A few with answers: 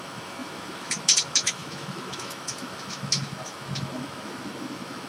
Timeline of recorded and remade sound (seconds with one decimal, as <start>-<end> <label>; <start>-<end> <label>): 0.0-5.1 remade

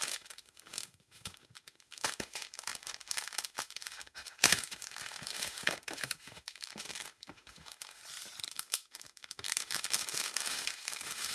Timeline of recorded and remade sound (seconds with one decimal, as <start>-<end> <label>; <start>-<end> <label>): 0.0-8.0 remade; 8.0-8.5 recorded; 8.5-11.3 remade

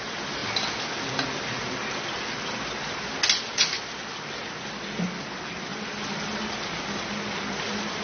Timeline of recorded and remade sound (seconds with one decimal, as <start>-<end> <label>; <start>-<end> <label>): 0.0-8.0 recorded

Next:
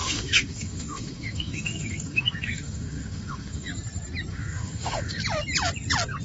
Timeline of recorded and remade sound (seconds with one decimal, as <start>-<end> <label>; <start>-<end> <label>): 0.0-3.7 remade; 3.7-4.3 recorded; 4.3-5.2 remade; 5.2-6.2 recorded

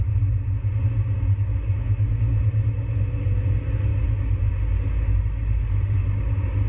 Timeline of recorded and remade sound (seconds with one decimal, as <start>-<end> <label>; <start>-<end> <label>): 0.0-1.5 recorded; 1.5-2.3 remade; 2.3-3.9 recorded; 3.9-4.5 remade; 4.5-6.0 recorded; 6.0-6.7 remade

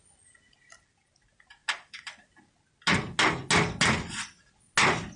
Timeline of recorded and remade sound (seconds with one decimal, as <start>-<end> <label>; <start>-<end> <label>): 0.0-5.2 recorded